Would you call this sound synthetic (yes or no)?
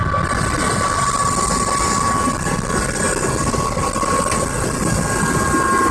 no